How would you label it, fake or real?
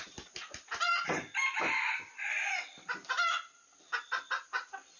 real